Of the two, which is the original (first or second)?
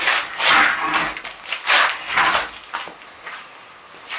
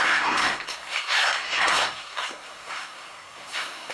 first